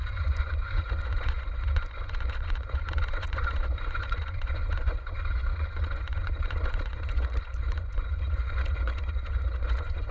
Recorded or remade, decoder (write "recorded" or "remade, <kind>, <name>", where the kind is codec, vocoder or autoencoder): remade, vocoder, Vocos